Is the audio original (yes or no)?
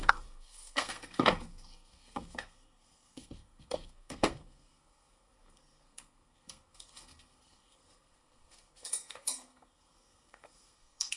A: no